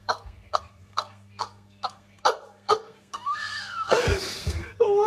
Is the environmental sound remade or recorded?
remade